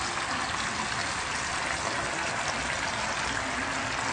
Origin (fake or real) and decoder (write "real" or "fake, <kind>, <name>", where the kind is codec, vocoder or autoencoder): real